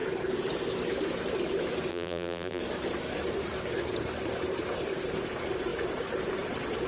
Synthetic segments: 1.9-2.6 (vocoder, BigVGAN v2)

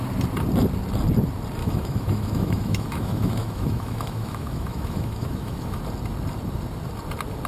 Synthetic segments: 1.6-5.8 (autoencoder, DAC-VAE)

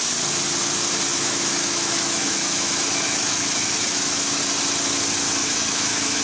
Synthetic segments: 1.1-4.4 (autoencoder, DAC-VAE); 5.4-6.2

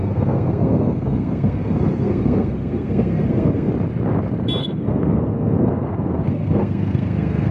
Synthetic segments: 0.0-3.7 (codec, SNAC); 4.6-7.5